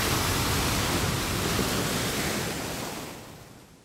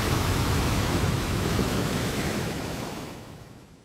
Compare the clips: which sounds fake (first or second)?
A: second